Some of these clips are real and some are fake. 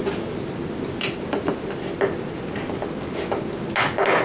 real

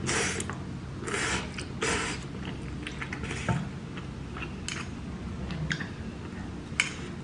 real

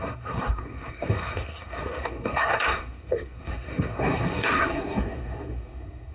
fake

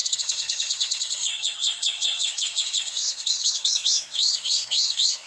fake